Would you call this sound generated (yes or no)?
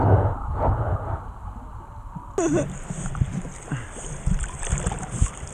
no